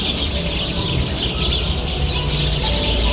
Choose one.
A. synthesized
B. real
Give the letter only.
B